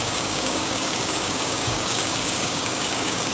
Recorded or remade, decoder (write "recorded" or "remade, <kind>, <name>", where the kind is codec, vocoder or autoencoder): remade, codec, DAC